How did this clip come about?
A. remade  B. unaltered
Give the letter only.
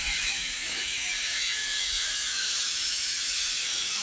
A